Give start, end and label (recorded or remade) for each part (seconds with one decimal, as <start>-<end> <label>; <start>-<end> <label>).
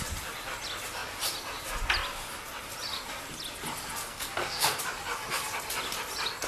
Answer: 0.0-4.0 recorded; 4.0-4.8 remade; 4.8-6.5 recorded